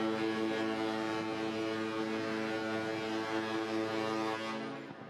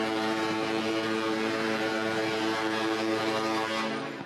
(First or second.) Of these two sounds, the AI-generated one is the second